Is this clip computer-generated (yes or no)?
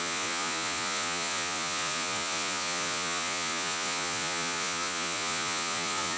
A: yes